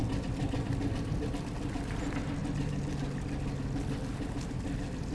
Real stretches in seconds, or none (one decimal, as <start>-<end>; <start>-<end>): 0.0-5.1